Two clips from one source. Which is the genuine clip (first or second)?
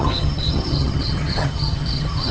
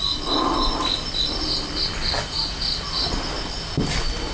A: second